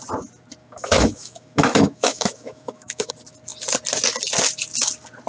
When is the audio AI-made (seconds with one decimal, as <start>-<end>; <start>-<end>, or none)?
0.6-3.1